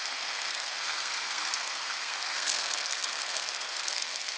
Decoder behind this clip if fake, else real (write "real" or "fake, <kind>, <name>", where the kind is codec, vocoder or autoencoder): fake, codec, SNAC